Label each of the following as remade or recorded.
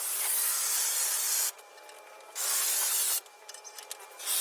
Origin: recorded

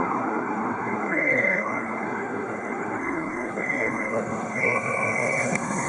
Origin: remade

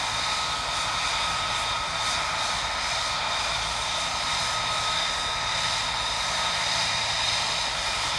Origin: recorded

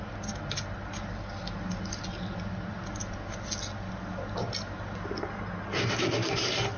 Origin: recorded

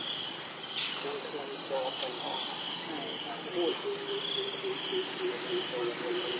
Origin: recorded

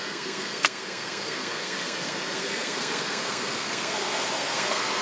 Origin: remade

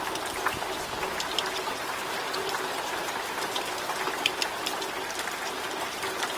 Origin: recorded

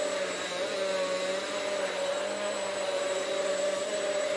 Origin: recorded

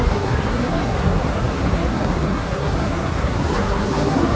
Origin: remade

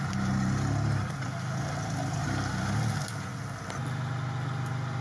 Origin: recorded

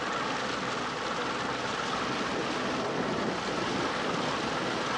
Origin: recorded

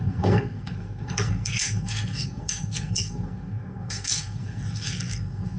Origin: remade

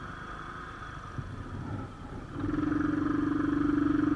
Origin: recorded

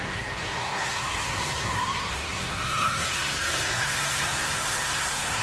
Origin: remade